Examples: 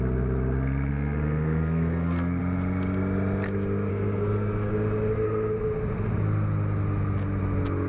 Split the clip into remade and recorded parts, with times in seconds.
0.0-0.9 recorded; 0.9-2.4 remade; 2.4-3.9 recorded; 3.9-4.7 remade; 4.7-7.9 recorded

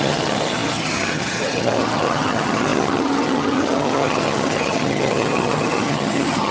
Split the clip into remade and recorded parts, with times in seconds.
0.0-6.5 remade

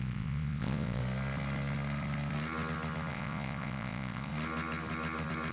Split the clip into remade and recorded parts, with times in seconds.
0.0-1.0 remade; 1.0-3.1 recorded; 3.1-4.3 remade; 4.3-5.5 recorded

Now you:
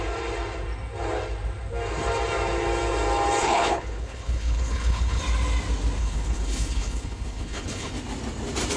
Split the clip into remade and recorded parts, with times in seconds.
0.0-3.4 recorded; 3.4-5.2 remade; 5.2-6.0 recorded; 6.0-7.9 remade; 7.9-8.8 recorded

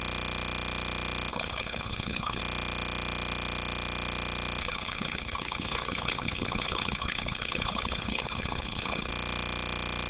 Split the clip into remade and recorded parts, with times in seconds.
0.0-1.3 recorded; 1.3-2.4 remade; 2.4-4.6 recorded; 4.6-9.1 remade; 9.1-10.1 recorded

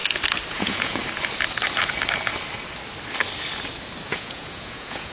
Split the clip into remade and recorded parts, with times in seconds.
0.0-0.5 recorded; 0.5-1.0 remade; 1.0-4.1 recorded; 4.1-5.1 remade

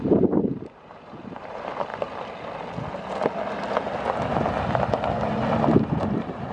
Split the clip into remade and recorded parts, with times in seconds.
0.0-1.9 remade; 1.9-5.8 recorded; 5.8-6.5 remade

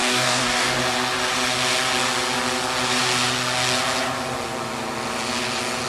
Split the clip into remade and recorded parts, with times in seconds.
0.0-0.8 remade; 0.8-5.9 recorded